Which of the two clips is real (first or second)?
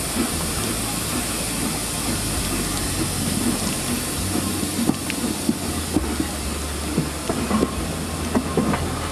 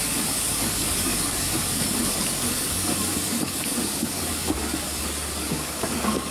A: first